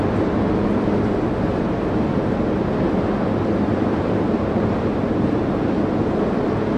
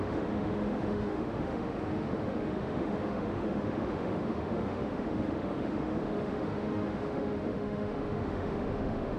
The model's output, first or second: second